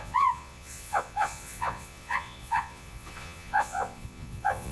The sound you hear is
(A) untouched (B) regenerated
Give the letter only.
B